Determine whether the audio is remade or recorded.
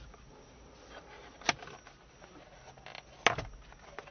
recorded